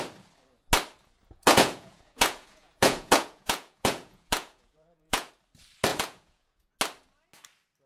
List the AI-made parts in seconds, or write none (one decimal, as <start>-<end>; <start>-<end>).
1.2-5.3; 5.9-6.7